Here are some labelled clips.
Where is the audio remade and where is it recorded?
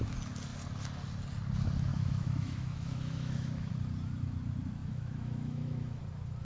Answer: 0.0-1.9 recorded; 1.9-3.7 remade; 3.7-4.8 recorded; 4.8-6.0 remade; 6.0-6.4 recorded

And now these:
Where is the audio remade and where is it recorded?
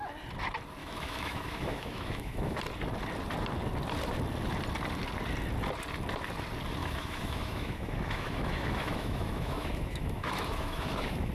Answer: 0.0-0.8 recorded; 0.8-2.6 remade; 2.6-6.8 recorded; 6.8-11.3 remade